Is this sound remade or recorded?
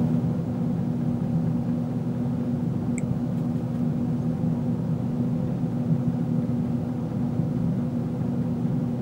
recorded